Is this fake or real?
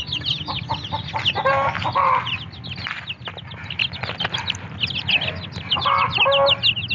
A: real